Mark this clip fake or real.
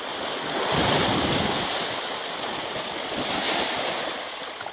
real